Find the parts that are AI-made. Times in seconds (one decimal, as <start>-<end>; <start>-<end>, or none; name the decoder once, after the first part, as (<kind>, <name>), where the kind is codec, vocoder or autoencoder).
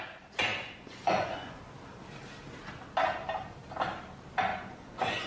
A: 0.5-1.6 (vocoder, Vocos); 4.5-5.3